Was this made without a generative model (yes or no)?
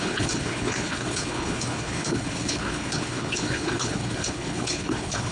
no